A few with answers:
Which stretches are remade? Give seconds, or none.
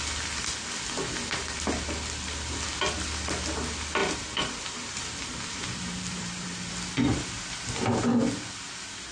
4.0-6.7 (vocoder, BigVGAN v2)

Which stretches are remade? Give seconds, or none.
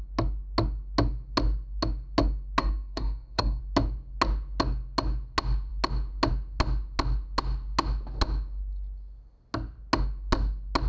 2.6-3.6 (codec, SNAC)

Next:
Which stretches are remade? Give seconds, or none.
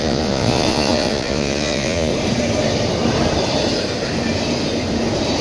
0.0-2.1 (vocoder, Vocos)